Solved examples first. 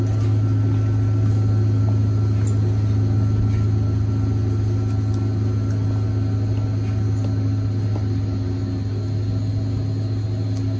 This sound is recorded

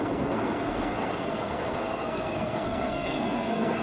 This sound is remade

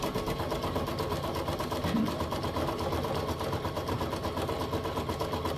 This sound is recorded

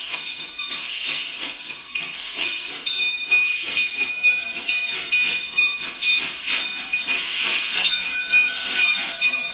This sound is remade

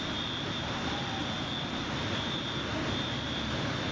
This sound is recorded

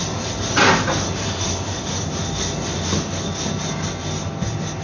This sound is recorded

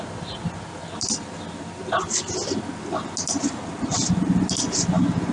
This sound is recorded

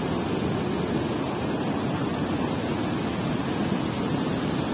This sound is recorded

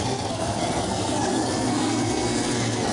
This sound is remade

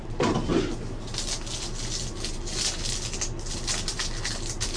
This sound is recorded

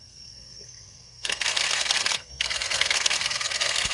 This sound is remade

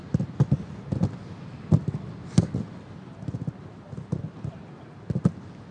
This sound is recorded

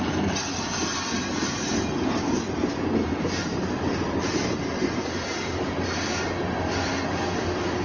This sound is recorded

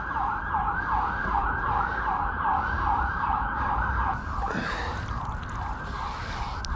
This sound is recorded